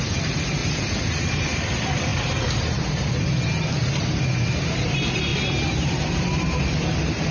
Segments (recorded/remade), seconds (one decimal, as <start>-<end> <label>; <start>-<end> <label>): 0.0-0.6 remade; 0.6-1.2 recorded; 1.2-7.3 remade